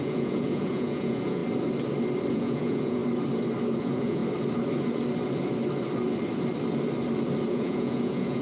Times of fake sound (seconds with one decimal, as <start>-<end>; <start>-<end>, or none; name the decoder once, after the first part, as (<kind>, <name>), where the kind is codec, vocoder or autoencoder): 0.0-1.4 (vocoder, Vocos); 2.3-3.0; 3.8-4.2; 7.5-8.4